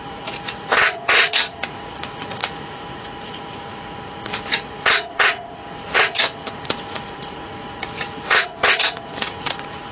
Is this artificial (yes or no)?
yes